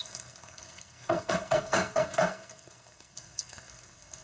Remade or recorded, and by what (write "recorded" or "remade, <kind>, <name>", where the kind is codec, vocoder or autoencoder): remade, codec, SNAC